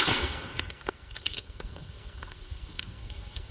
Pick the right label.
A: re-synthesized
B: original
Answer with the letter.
A